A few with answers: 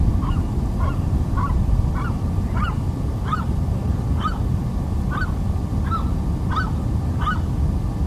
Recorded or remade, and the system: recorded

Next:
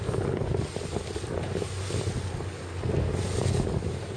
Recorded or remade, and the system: recorded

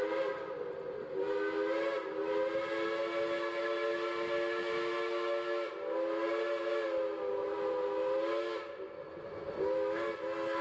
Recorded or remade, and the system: recorded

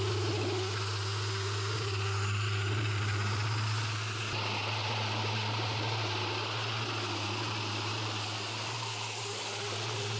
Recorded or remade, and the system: recorded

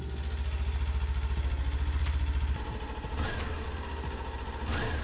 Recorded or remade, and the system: recorded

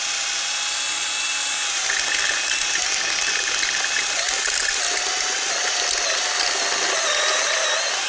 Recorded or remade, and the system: recorded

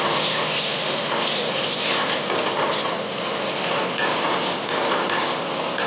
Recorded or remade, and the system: recorded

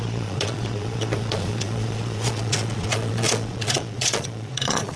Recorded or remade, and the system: remade, vocoder, Vocos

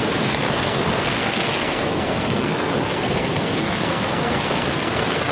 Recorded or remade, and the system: remade, codec, SNAC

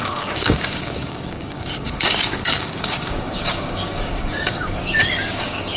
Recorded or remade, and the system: remade, codec, DAC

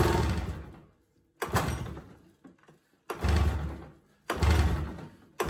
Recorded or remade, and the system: recorded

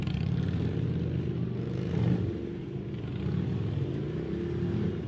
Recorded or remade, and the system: recorded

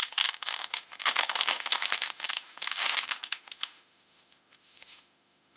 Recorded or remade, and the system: remade, autoencoder, DAC-VAE